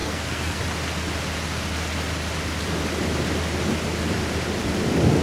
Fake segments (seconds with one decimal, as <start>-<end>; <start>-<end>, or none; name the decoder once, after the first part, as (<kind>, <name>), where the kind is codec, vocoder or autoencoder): 0.0-0.6 (codec, SNAC)